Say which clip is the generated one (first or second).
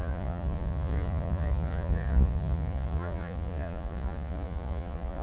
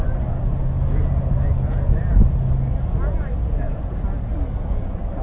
first